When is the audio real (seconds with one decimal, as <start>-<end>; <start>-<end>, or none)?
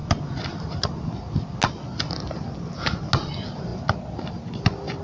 0.0-5.0